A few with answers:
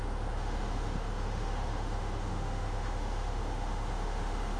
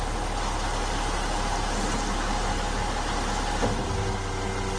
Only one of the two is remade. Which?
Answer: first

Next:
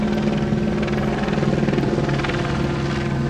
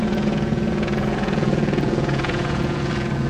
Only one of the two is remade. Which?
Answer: second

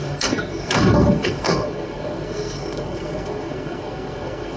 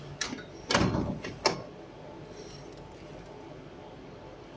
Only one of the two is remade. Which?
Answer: first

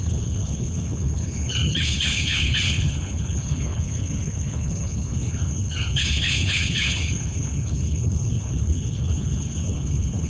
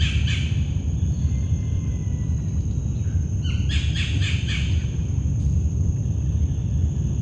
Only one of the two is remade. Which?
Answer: first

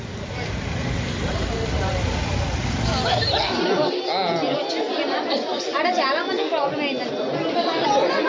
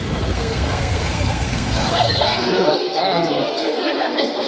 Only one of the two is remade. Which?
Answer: second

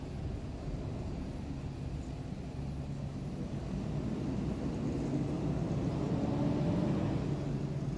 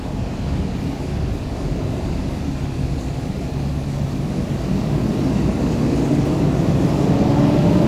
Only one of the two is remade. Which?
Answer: second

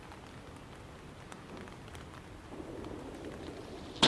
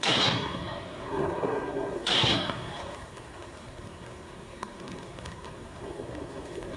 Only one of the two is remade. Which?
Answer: second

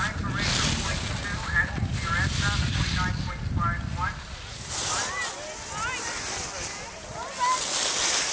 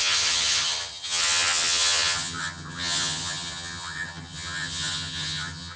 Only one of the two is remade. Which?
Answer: second